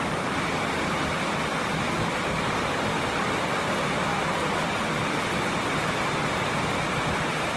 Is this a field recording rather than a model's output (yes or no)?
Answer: no